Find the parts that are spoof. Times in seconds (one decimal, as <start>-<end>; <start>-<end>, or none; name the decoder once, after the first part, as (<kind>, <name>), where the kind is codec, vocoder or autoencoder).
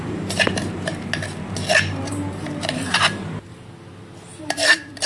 0.0-0.9 (vocoder, BigVGAN v2); 2.1-3.5; 4.6-5.1